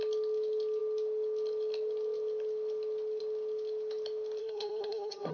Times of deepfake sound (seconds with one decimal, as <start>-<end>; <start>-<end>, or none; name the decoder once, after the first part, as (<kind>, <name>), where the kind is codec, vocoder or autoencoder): 4.4-5.3 (codec, SNAC)